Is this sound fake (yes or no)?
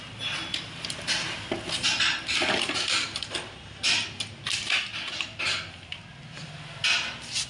no